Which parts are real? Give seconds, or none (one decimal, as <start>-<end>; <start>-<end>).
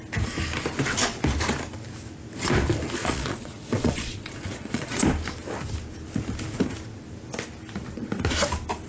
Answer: 0.0-3.0; 5.0-8.9